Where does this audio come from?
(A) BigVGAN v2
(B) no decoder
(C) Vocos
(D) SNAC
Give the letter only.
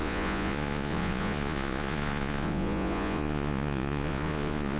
C